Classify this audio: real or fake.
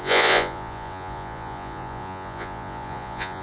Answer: fake